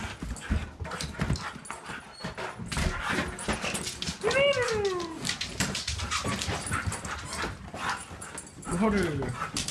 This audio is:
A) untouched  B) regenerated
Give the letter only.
A